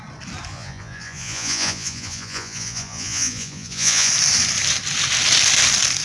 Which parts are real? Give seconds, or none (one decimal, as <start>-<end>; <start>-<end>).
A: 0.0-0.5; 4.1-6.0